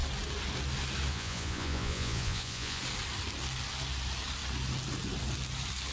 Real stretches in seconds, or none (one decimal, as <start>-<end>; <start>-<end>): 0.0-1.1; 2.8-5.9